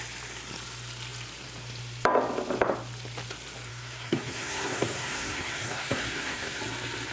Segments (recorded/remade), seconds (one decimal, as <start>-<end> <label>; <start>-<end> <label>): 0.0-3.7 recorded; 3.7-6.6 remade; 6.6-7.1 recorded